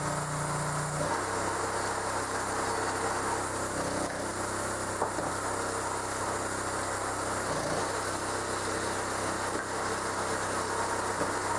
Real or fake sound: real